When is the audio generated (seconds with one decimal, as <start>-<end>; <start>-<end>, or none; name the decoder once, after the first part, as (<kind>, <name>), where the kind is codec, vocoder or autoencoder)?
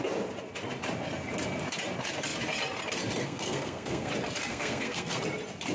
3.2-4.1 (codec, SNAC); 4.5-5.2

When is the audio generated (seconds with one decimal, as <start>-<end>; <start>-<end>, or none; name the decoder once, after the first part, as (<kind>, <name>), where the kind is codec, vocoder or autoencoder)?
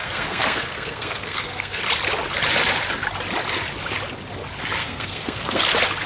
0.0-1.8 (codec, SNAC); 4.8-5.6